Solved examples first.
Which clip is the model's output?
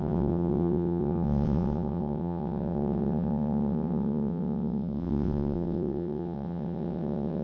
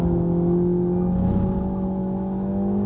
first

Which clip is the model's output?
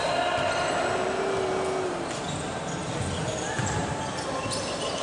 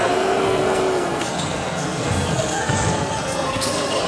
second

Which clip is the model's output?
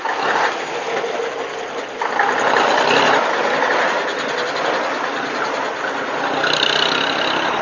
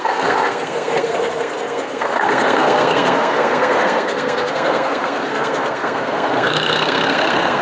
second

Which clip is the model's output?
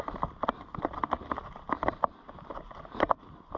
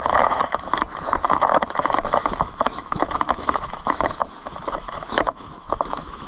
second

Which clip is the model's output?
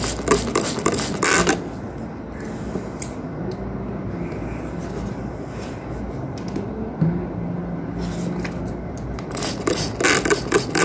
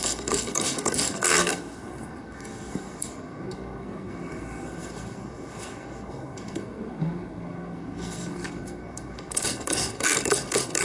second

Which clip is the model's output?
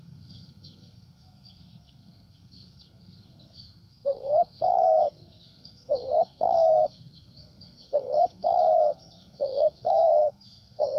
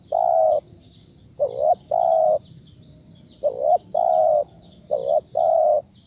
first